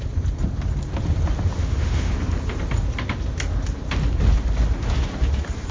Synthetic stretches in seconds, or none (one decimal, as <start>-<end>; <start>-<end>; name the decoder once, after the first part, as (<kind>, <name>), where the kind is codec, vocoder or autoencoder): 1.6-2.1 (autoencoder, DAC-VAE)